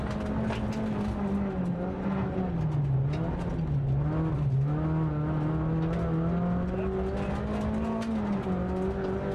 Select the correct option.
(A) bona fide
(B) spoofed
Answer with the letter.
A